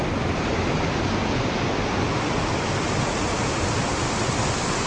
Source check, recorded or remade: recorded